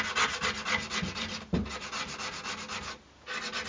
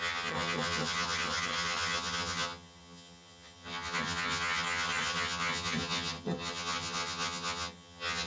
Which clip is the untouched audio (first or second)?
first